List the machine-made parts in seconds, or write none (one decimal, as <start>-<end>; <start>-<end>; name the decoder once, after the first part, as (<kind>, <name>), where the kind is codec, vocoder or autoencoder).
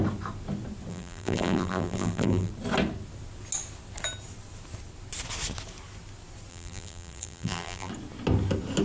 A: 0.9-2.5 (vocoder, BigVGAN v2); 6.5-7.9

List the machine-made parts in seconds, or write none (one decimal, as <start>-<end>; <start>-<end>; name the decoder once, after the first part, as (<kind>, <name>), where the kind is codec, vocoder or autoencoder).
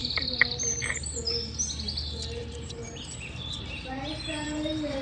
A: 0.0-0.9 (vocoder, BigVGAN v2); 2.4-5.0